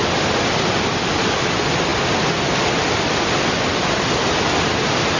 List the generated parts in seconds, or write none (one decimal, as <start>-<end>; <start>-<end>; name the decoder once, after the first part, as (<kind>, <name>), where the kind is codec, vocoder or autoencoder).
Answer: none